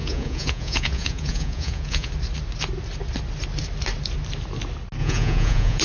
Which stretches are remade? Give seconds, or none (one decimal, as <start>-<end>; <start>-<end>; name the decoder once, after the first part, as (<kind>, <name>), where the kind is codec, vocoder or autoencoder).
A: 0.0-2.1 (vocoder, Vocos); 5.0-5.8